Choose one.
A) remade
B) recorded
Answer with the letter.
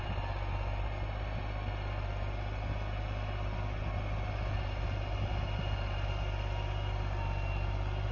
B